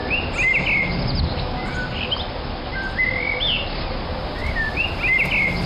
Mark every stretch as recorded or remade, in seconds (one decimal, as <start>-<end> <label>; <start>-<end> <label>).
0.0-4.4 recorded; 4.4-4.9 remade; 4.9-5.7 recorded